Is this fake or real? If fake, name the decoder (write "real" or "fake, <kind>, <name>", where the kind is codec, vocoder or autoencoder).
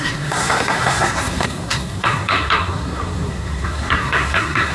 fake, codec, SNAC